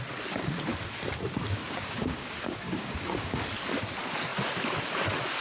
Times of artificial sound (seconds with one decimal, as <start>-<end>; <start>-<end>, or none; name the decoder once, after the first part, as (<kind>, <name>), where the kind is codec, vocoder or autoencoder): 1.6-3.4 (codec, DAC)